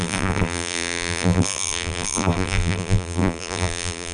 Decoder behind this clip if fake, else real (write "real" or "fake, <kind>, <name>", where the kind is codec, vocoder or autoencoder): fake, vocoder, BigVGAN v2